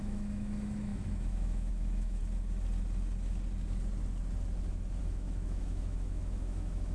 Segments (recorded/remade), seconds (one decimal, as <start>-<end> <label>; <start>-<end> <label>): 0.0-2.2 remade; 2.2-5.0 recorded; 5.0-6.9 remade